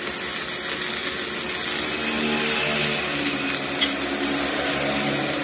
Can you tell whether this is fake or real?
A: real